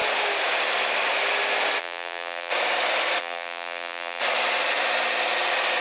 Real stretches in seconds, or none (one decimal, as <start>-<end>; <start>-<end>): 0.0-1.8; 2.5-3.2; 4.2-5.8